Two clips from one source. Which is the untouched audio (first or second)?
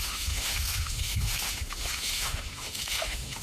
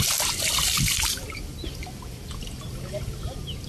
second